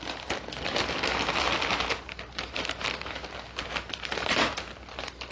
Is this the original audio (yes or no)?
yes